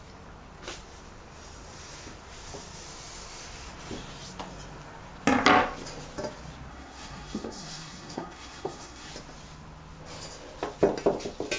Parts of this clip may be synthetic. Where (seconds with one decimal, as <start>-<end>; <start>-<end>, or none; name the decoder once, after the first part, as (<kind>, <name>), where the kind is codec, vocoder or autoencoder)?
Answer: 6.7-9.1 (codec, SNAC)